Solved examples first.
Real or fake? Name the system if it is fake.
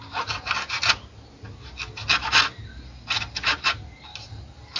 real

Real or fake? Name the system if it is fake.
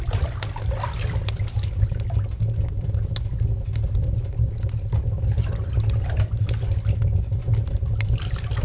real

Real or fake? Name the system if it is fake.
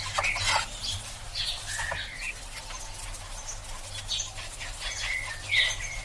real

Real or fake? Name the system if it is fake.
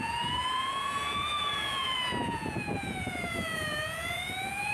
fake, vocoder, Vocos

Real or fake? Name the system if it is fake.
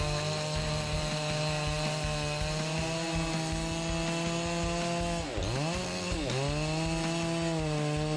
real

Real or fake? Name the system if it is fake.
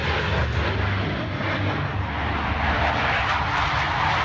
real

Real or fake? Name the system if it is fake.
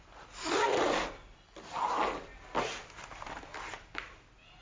real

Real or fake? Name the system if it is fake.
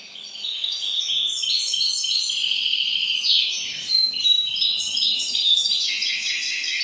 fake, autoencoder, DAC-VAE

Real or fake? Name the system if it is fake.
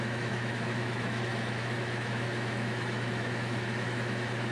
fake, autoencoder, DAC-VAE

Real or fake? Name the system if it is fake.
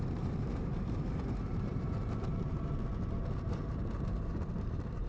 fake, vocoder, BigVGAN v2